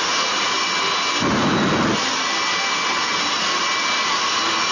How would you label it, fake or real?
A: real